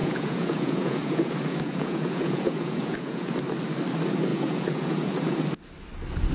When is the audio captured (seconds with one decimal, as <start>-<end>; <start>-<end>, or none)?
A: 3.3-4.3; 5.4-6.3